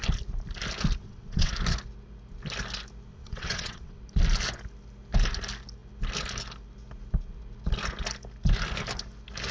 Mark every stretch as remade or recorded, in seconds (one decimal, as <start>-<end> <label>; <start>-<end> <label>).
0.0-1.0 recorded; 1.0-1.5 remade; 1.5-3.1 recorded; 3.1-4.0 remade; 4.0-9.5 recorded